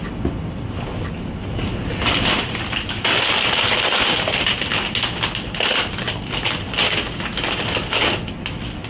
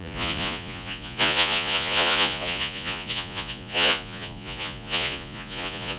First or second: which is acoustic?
first